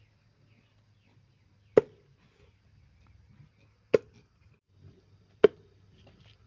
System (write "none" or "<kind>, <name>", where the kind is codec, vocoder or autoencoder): none